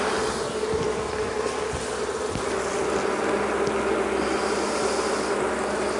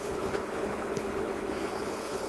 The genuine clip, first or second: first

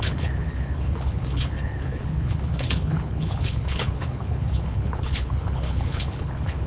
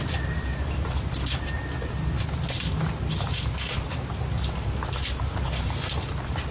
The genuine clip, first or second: second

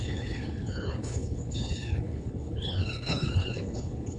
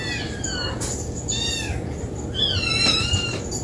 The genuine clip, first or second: second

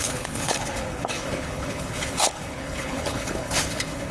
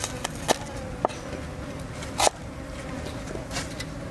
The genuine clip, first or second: second